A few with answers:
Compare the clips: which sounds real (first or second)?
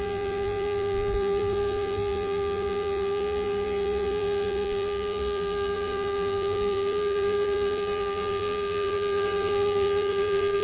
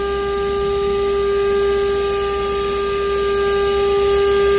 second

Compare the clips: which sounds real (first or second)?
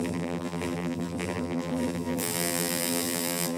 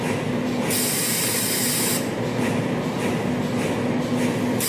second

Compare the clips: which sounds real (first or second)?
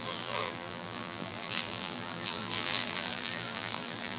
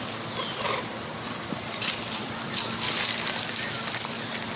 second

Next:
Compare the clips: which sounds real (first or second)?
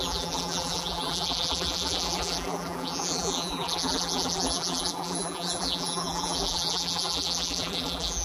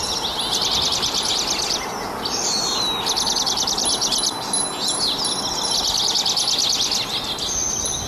second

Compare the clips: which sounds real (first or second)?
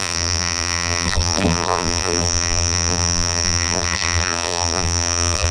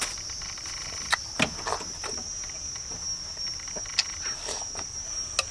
second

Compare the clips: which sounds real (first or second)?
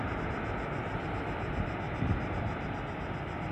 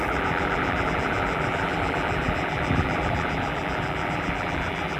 first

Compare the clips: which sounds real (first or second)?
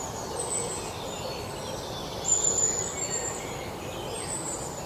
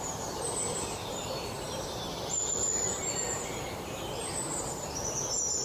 first